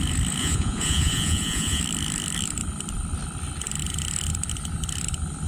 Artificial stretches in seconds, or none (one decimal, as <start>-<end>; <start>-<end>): 0.4-1.8